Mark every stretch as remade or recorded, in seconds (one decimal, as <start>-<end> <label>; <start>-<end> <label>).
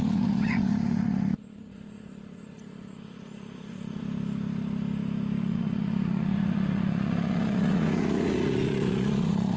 0.0-4.0 remade; 4.0-5.4 recorded; 5.4-9.6 remade